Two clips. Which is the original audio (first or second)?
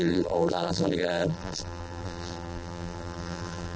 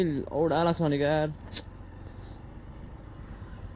second